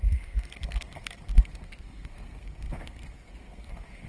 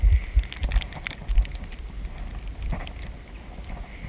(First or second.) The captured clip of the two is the second